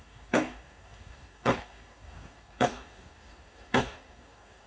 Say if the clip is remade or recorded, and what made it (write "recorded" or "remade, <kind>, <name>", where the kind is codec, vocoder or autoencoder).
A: remade, codec, DAC